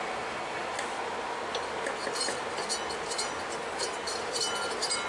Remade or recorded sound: recorded